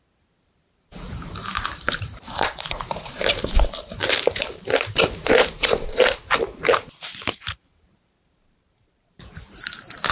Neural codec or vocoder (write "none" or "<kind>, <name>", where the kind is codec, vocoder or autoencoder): vocoder, BigVGAN v2